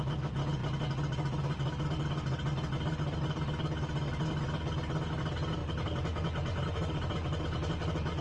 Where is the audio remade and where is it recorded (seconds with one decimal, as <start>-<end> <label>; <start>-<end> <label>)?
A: 0.0-8.2 recorded